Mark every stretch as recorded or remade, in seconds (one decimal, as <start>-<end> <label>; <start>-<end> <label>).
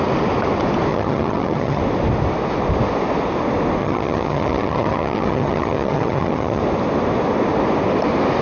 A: 0.0-0.9 recorded; 0.9-1.8 remade; 1.8-3.8 recorded; 3.8-6.6 remade; 6.6-8.4 recorded